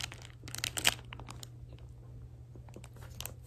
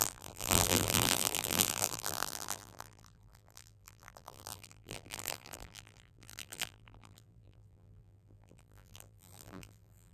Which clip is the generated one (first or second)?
second